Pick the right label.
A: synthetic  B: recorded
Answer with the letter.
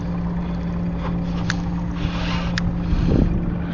B